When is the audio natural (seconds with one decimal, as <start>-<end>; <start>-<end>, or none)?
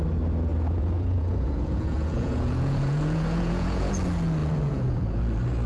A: 0.0-0.5; 3.9-4.4; 5.2-5.7